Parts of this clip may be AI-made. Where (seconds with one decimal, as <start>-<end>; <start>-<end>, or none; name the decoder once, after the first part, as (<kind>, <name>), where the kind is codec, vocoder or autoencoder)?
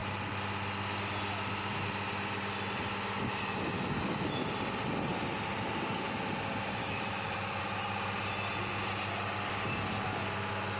3.4-4.5 (autoencoder, DAC-VAE); 6.8-7.6